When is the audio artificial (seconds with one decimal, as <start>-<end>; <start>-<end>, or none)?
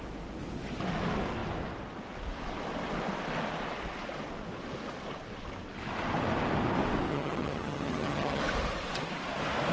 7.1-8.4